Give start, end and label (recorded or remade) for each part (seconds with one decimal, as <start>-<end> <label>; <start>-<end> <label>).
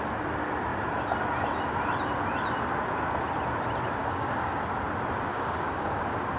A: 0.0-4.0 recorded; 4.0-4.6 remade; 4.6-5.3 recorded; 5.3-6.0 remade; 6.0-6.4 recorded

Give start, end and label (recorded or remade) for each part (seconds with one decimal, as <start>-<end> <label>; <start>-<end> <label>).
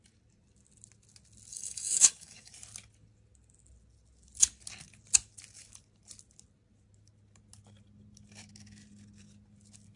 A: 0.0-1.5 recorded; 1.5-2.5 remade; 2.5-10.0 recorded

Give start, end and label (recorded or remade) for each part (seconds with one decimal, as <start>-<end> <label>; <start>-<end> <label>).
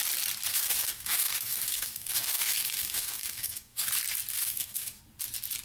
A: 0.0-0.5 recorded; 0.5-3.9 remade; 3.9-4.3 recorded; 4.3-5.0 remade; 5.0-5.6 recorded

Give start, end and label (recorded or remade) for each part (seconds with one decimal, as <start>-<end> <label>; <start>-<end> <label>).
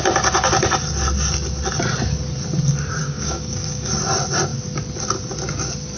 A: 0.0-3.0 recorded; 3.0-3.9 remade; 3.9-6.0 recorded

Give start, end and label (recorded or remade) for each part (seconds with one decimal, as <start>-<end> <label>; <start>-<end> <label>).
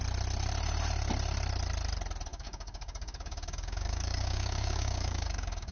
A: 0.0-2.3 recorded; 2.3-5.7 remade